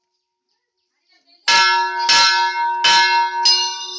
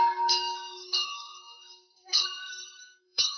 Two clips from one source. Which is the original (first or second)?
first